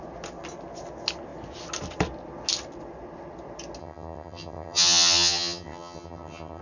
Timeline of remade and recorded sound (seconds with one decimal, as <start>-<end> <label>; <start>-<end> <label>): 0.0-3.8 recorded; 3.8-6.6 remade